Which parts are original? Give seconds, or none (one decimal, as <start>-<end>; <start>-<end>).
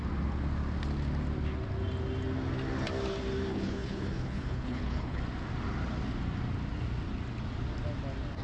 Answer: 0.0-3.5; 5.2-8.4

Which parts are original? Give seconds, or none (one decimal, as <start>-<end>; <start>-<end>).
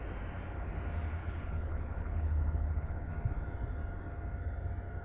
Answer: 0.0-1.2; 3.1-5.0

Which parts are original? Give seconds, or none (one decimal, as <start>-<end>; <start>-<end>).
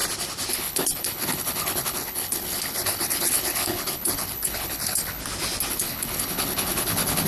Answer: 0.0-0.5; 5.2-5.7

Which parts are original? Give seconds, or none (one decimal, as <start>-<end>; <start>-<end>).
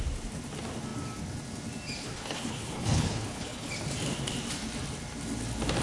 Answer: 0.0-2.0; 3.7-5.8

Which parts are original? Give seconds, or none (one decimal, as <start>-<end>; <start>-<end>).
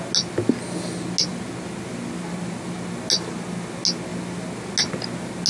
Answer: 0.0-5.5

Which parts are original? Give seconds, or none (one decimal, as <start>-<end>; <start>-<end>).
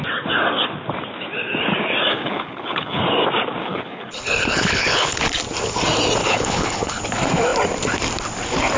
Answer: 0.0-2.1; 3.0-3.6; 5.2-6.2; 7.0-8.8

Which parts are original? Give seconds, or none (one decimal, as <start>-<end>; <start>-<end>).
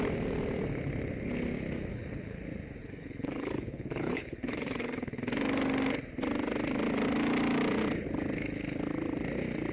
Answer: 0.0-1.9; 2.4-2.8; 5.2-9.7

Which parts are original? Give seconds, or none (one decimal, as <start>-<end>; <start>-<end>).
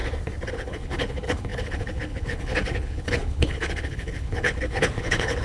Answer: 0.0-0.5